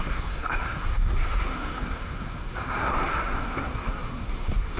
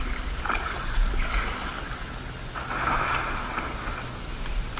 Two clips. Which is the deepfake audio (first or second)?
first